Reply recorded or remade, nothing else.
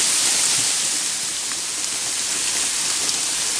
recorded